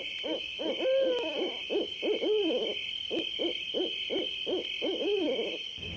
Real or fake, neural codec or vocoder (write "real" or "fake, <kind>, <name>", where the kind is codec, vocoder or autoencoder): fake, vocoder, BigVGAN v2